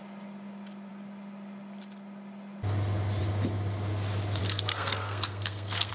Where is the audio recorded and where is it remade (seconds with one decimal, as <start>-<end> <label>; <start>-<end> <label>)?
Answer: 0.0-4.4 recorded; 4.4-5.9 remade